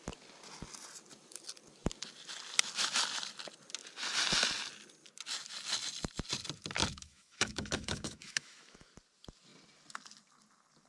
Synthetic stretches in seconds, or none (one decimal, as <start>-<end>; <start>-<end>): 6.8-8.9